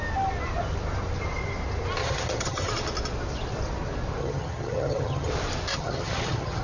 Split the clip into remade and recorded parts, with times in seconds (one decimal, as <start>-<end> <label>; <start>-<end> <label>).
0.0-2.0 recorded; 2.0-2.7 remade; 2.7-4.2 recorded; 4.2-5.3 remade; 5.3-5.7 recorded; 5.7-6.6 remade